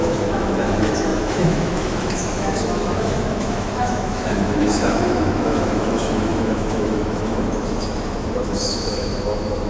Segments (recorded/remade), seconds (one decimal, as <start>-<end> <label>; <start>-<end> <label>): 0.0-9.7 remade